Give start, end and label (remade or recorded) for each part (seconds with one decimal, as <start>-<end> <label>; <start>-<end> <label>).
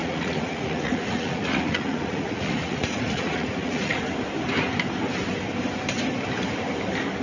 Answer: 0.0-4.0 remade; 4.0-7.2 recorded